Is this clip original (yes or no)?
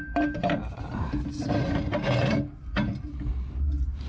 no